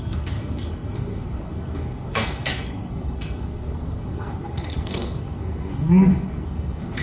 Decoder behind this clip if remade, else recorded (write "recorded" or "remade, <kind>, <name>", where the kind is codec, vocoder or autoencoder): remade, codec, SNAC